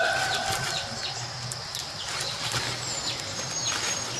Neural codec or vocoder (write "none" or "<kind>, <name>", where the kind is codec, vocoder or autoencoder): none